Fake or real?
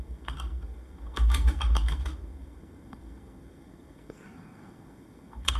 fake